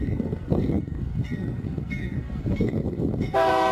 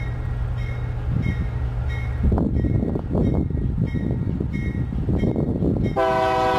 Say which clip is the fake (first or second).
first